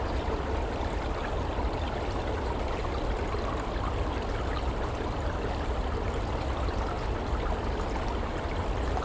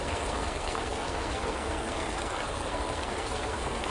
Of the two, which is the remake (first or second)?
second